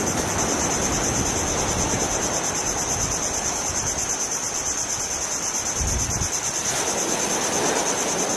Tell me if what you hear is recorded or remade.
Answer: recorded